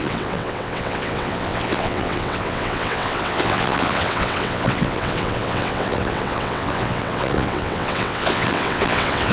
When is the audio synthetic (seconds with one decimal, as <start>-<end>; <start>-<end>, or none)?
0.0-9.3